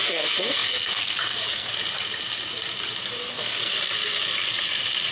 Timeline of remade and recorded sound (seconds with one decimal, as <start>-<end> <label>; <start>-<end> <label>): 0.0-1.7 remade; 1.7-3.3 recorded; 3.3-3.7 remade; 3.7-5.1 recorded